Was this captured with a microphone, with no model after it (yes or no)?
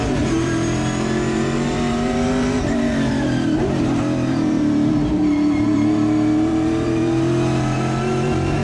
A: no